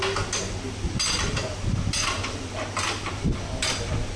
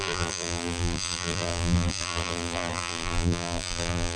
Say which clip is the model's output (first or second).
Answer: second